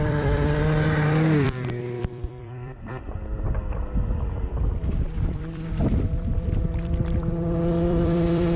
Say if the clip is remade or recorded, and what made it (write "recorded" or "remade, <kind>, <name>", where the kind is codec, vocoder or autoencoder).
remade, vocoder, BigVGAN v2